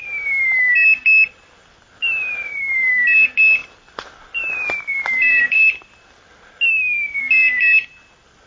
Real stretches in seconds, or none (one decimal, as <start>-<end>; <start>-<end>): 0.0-3.6; 6.5-8.5